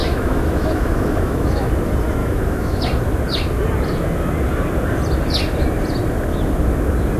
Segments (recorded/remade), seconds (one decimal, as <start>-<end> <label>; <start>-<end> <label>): 0.0-1.7 remade; 1.7-2.2 recorded; 2.2-2.8 remade; 2.8-7.2 recorded

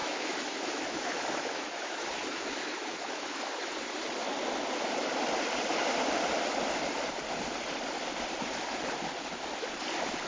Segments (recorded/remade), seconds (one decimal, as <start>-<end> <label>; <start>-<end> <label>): 0.0-3.7 remade; 3.7-10.3 recorded

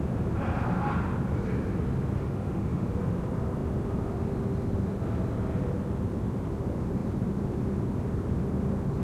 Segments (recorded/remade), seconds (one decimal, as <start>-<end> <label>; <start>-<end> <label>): 0.0-2.2 recorded; 2.2-2.9 remade; 2.9-9.0 recorded

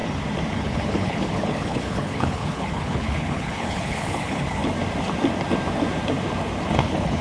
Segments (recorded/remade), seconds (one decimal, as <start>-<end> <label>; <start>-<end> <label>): 0.0-0.5 recorded; 0.5-4.6 remade; 4.6-6.8 recorded; 6.8-7.2 remade

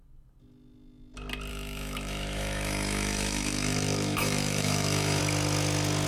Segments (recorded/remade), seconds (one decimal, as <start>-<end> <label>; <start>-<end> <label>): 0.0-1.5 recorded; 1.5-5.2 remade; 5.2-6.1 recorded